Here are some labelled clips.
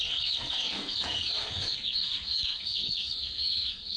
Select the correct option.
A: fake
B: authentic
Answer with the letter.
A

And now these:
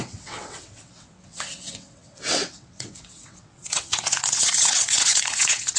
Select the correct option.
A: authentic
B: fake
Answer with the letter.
B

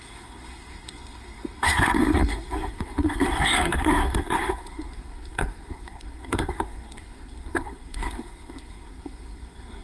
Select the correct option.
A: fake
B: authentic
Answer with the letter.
A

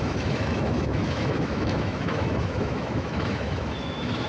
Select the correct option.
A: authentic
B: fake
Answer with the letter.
B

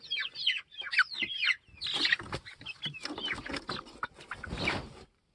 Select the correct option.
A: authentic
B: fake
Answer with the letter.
A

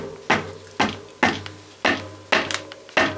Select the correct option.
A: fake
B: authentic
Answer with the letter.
B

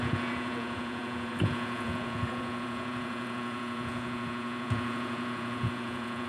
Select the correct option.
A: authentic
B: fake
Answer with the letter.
B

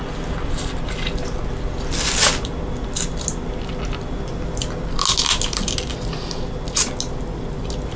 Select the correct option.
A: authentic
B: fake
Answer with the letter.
A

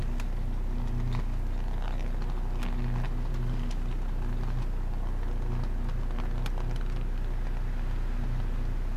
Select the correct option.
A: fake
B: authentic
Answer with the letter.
B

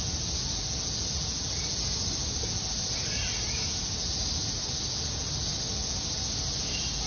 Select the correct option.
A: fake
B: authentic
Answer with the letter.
B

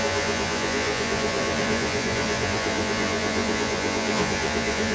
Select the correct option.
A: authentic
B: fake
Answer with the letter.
B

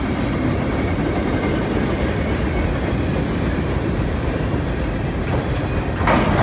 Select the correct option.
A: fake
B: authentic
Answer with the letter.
B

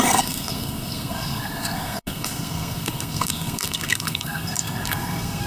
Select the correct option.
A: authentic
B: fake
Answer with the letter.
B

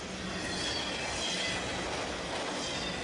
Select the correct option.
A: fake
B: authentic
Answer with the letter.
B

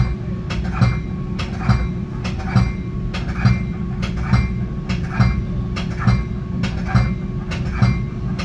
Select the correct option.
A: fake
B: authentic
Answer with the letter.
B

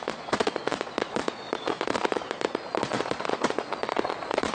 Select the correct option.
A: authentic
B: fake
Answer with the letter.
B